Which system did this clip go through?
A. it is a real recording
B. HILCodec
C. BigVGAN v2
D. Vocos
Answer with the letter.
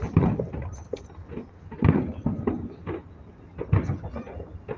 A